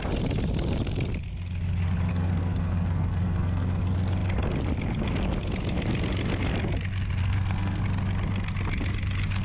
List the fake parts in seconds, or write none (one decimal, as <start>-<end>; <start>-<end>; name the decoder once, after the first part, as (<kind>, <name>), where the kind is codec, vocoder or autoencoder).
2.1-3.8 (codec, SNAC); 7.2-7.8